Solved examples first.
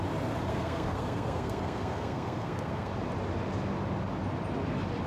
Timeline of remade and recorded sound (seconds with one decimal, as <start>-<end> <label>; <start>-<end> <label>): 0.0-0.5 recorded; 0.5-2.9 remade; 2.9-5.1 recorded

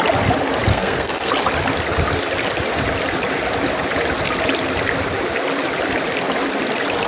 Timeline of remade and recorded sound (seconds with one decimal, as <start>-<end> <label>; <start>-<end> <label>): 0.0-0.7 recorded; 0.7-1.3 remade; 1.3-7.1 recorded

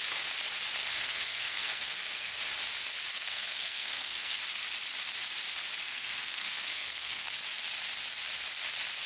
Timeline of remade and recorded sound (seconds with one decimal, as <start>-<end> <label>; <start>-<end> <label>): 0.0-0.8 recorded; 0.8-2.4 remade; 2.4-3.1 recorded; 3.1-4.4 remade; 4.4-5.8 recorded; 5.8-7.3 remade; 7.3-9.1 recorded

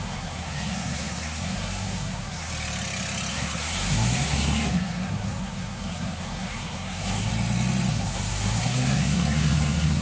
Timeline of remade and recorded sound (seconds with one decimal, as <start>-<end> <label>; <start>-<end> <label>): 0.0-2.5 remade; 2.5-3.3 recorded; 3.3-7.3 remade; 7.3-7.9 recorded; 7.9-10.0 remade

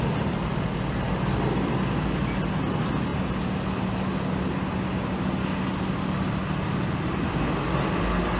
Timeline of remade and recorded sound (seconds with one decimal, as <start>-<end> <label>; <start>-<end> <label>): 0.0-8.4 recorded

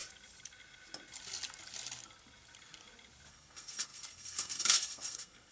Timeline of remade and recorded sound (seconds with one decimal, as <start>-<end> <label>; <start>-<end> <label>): 0.0-3.3 recorded; 3.3-5.5 remade

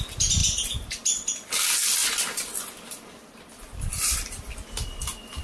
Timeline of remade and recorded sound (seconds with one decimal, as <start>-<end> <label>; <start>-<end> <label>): 0.0-5.4 recorded

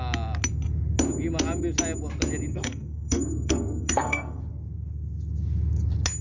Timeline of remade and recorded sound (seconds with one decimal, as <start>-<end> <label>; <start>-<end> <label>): 0.0-2.5 recorded; 2.5-4.4 remade; 4.4-6.2 recorded